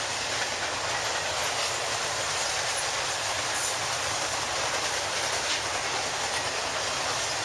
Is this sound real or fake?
real